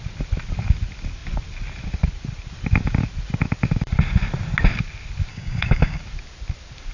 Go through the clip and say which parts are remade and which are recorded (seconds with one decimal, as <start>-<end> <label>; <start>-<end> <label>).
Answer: 0.0-5.3 recorded; 5.3-6.0 remade; 6.0-6.9 recorded